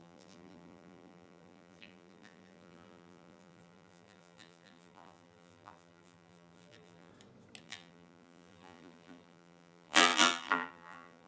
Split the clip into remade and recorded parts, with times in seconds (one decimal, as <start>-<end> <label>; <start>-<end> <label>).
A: 0.0-7.1 remade; 7.1-7.6 recorded; 7.6-11.3 remade